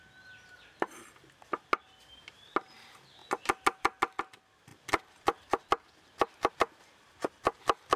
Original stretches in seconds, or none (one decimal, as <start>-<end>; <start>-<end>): 0.0-8.0